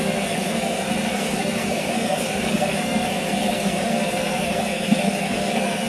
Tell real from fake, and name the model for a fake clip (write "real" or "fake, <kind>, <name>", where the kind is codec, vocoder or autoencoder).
fake, codec, SNAC